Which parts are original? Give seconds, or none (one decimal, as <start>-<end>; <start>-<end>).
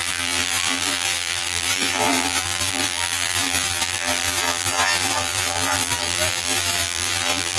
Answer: none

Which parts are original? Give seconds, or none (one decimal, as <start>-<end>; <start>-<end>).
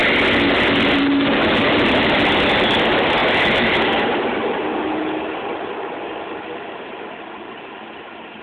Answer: 0.0-8.4